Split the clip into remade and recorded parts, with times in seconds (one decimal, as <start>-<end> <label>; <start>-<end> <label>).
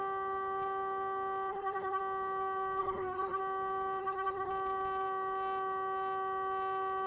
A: 0.0-1.5 recorded; 1.5-2.0 remade; 2.0-2.8 recorded; 2.8-3.4 remade; 3.4-4.0 recorded; 4.0-4.5 remade; 4.5-7.1 recorded